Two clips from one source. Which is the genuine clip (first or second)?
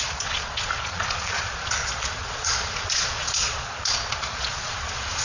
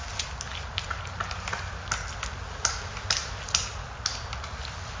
second